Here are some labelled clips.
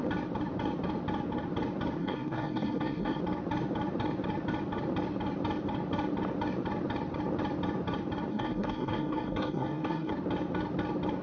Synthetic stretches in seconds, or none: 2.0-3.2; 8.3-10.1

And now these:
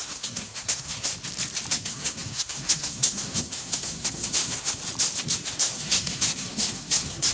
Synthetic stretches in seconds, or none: 0.0-1.1; 1.7-4.8; 5.3-7.3

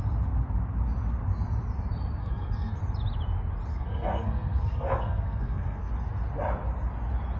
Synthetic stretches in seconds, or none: 2.2-2.8; 3.7-5.9

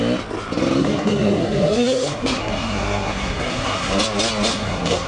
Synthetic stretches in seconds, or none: 0.8-3.9; 4.5-5.1

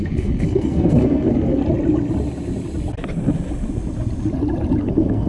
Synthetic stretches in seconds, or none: 0.0-1.6; 4.8-5.3

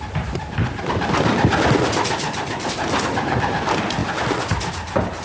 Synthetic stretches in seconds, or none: none